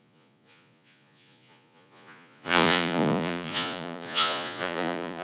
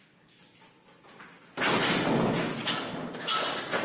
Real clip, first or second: second